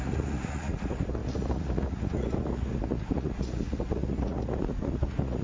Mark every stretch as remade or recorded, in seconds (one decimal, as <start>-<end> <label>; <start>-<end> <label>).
0.0-5.4 remade